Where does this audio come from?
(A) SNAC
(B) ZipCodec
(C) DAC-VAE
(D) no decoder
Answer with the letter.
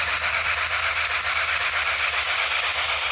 D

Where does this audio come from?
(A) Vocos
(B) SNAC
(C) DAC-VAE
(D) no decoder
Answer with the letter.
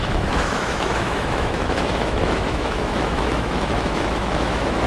C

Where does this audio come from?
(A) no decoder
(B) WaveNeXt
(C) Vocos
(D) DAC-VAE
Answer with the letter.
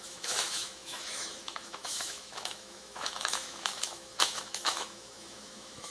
D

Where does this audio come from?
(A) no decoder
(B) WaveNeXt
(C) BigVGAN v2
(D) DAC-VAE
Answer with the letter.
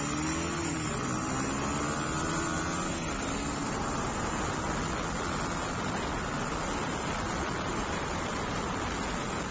A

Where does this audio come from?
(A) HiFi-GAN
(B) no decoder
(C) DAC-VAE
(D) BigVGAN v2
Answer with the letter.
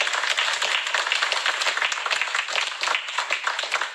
B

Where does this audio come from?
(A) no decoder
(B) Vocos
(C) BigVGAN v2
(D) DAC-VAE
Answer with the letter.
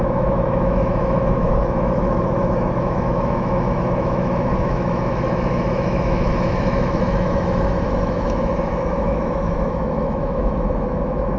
D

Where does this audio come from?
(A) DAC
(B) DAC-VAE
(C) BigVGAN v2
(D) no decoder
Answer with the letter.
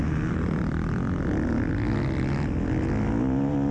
D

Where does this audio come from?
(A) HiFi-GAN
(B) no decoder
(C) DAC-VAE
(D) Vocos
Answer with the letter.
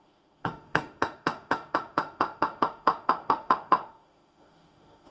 C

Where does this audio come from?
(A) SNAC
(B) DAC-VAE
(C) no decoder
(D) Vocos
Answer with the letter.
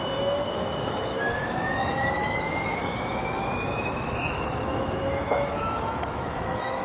B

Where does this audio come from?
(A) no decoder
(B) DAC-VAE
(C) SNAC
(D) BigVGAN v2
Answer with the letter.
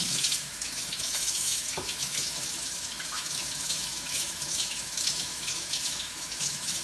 B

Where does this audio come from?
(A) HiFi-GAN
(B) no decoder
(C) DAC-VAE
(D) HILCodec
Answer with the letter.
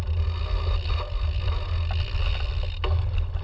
B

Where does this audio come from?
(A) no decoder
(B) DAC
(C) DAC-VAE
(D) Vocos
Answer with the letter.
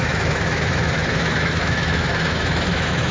C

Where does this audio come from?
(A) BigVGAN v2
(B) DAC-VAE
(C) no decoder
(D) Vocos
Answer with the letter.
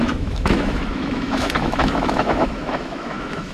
B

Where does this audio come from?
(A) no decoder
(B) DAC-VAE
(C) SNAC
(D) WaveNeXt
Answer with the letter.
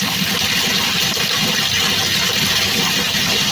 A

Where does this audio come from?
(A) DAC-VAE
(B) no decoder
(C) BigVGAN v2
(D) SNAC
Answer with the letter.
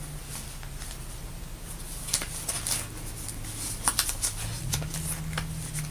B